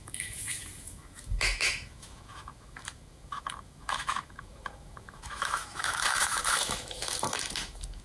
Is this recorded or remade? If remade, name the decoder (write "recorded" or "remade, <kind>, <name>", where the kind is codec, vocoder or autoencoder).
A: remade, autoencoder, DAC-VAE